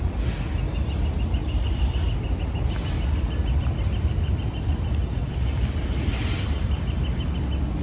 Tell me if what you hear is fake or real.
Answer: real